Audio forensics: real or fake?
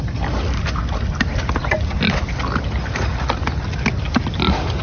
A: real